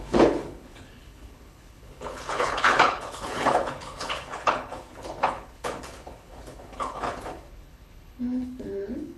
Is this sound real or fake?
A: fake